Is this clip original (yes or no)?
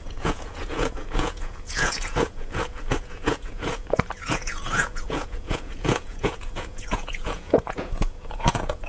no